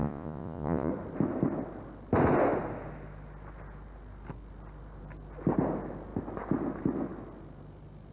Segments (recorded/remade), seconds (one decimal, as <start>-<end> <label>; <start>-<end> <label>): 0.0-0.9 remade; 0.9-8.1 recorded